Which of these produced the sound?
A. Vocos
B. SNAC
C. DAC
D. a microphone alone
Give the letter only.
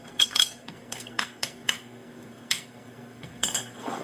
B